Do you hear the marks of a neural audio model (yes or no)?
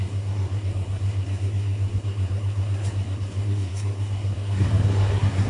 yes